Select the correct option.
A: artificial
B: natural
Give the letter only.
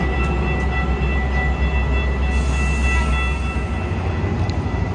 B